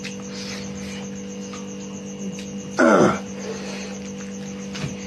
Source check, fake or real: real